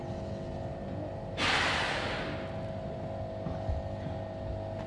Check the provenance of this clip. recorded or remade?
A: recorded